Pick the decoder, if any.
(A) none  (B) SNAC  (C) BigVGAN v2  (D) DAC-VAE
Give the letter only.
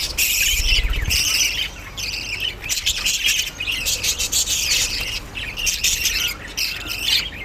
A